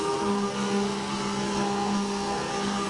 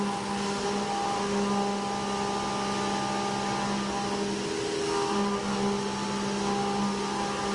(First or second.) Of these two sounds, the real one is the second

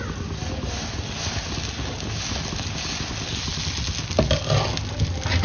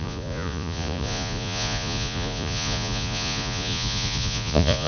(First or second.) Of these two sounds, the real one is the first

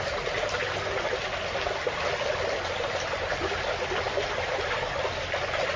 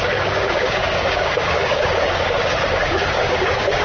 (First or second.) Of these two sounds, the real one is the first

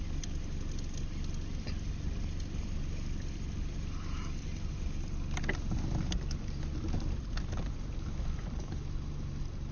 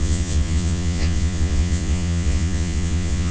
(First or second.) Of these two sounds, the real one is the first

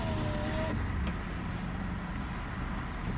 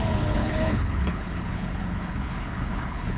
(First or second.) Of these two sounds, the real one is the first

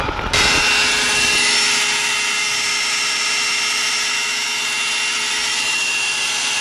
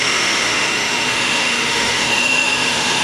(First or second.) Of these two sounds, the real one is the first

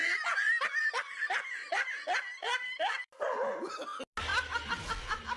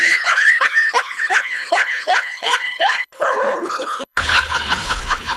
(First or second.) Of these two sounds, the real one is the first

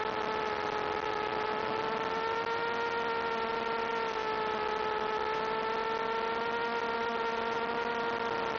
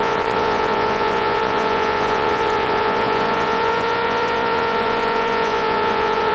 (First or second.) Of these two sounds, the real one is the first